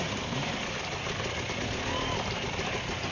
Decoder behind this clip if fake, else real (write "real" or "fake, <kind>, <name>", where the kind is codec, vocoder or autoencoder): real